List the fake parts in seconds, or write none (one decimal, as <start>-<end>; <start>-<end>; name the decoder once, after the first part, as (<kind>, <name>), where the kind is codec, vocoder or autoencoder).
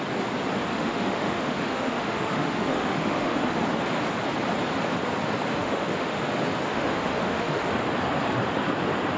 0.7-3.6 (autoencoder, DAC-VAE); 5.6-6.2; 6.7-7.7